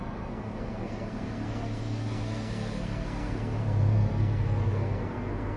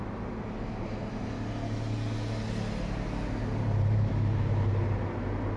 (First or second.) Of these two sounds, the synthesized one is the first